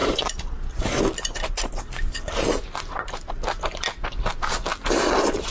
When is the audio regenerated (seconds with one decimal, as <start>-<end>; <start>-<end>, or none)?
none